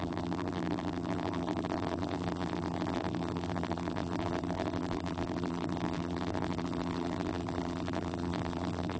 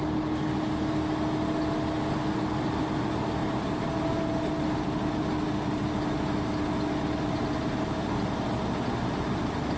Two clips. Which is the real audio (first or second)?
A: second